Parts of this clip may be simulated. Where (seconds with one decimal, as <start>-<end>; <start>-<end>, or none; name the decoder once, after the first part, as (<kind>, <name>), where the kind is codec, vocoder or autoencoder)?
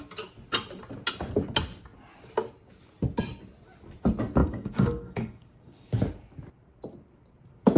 4.4-5.9 (codec, DAC)